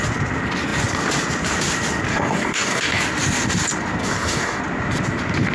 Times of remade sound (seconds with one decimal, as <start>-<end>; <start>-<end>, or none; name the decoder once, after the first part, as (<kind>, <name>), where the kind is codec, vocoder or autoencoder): 2.1-3.0 (codec, DAC); 4.0-4.6